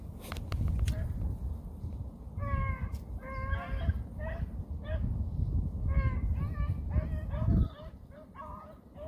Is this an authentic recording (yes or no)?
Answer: yes